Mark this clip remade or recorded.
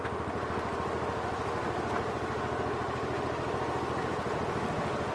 recorded